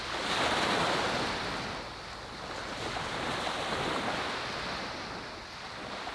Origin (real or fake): real